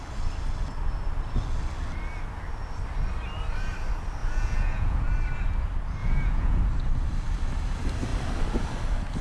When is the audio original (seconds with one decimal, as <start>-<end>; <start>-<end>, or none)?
0.0-4.2; 5.0-6.0; 6.6-9.2